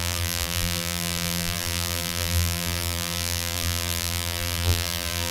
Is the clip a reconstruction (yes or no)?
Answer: yes